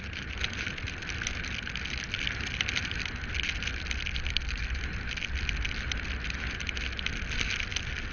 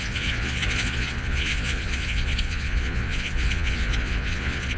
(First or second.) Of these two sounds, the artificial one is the second